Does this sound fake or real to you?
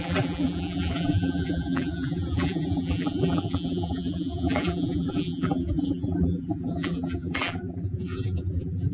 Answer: fake